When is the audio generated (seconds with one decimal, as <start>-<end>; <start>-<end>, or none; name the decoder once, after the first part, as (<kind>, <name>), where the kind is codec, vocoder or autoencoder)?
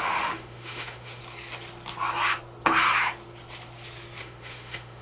0.0-1.2 (autoencoder, DAC-VAE); 4.2-5.0